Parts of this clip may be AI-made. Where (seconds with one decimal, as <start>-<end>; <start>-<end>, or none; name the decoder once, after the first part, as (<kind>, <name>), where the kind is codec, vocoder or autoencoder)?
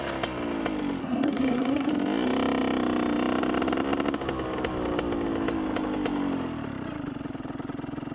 1.0-1.9 (codec, SNAC)